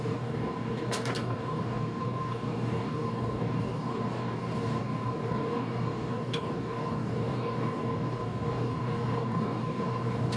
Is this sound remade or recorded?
remade